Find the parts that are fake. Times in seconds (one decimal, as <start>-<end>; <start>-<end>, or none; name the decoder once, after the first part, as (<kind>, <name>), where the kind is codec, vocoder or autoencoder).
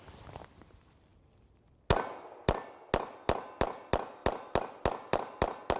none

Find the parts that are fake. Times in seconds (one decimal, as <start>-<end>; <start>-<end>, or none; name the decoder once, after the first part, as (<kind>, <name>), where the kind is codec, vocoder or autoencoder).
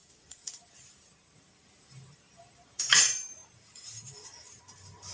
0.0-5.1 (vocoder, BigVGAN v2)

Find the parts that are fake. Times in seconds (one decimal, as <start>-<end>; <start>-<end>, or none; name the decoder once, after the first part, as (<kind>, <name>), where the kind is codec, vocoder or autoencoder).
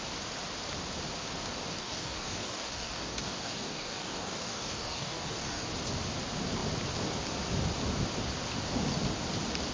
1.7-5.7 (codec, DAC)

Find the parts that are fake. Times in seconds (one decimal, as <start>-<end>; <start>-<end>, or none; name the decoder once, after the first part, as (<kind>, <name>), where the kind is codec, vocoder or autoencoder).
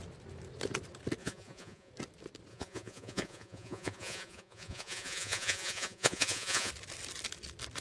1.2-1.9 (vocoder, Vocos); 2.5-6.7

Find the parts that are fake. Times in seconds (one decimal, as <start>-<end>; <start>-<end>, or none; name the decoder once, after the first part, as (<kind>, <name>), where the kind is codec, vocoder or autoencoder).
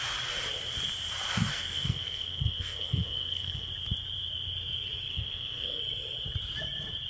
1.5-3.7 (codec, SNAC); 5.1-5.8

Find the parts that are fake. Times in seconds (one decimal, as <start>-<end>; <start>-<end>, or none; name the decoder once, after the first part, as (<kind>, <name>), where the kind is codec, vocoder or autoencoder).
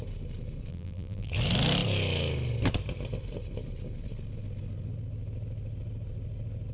0.7-1.3 (vocoder, BigVGAN v2)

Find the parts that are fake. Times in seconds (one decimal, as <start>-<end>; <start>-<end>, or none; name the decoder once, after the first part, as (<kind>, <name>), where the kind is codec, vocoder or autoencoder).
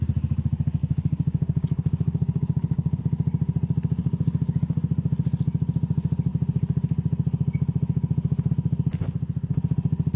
0.8-3.0 (codec, DAC); 4.0-4.8